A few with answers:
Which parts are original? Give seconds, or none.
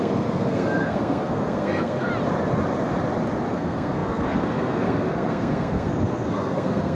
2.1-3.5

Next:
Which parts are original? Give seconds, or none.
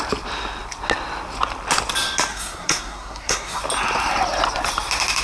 0.0-2.3; 3.6-5.2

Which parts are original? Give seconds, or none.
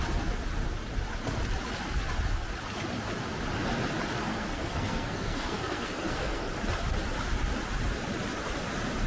0.0-4.3; 6.4-9.1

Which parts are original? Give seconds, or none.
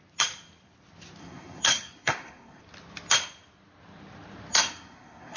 0.0-1.2; 2.6-4.5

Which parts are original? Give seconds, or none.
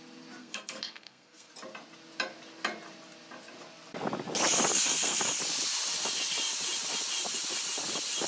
0.0-0.4; 1.5-4.7; 5.2-8.3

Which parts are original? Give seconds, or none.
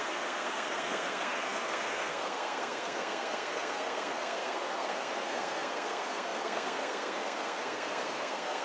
none